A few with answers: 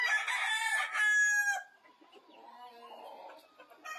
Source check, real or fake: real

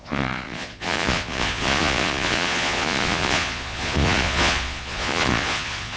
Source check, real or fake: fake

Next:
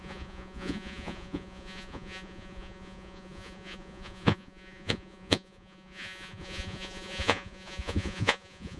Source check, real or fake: fake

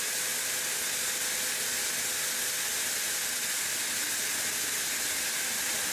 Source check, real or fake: real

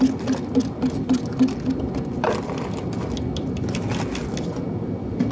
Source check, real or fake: real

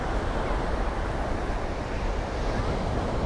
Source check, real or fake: real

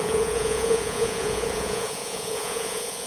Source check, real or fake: fake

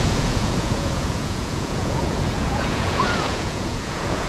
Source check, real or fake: fake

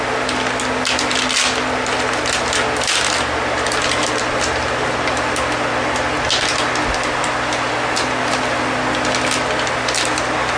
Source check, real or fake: real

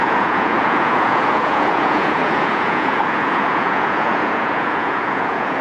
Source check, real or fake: fake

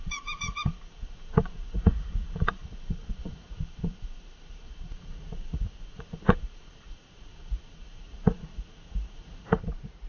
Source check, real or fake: fake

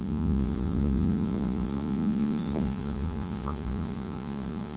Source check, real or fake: fake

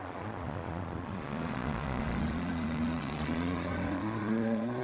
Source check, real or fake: fake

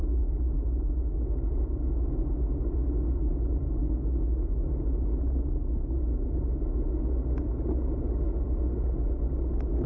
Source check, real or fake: real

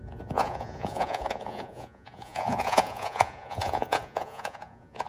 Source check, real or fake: fake